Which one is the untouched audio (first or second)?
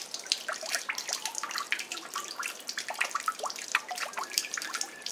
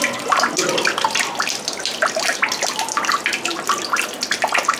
second